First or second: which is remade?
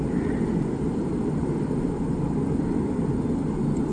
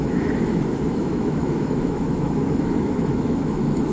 second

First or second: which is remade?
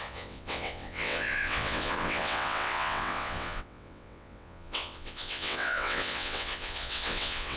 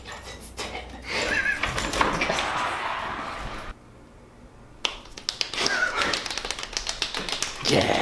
first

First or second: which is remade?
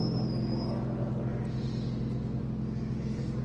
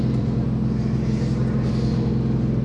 second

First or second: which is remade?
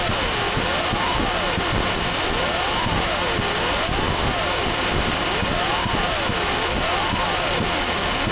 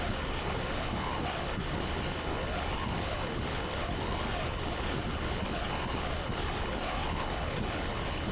second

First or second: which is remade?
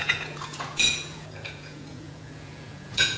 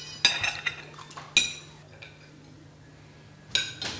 first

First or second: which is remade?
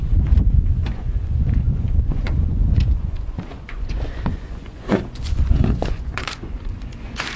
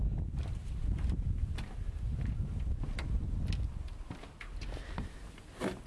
first